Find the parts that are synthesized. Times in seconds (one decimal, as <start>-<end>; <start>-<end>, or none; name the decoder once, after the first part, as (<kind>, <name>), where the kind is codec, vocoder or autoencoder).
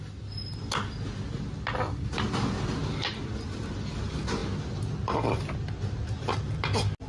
none